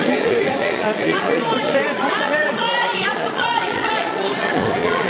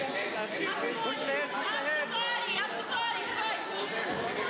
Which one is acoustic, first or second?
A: second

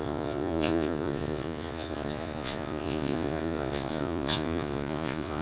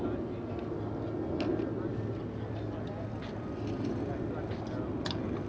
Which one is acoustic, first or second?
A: second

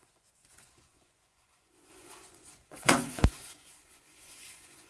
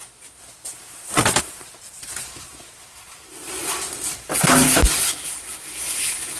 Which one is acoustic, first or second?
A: second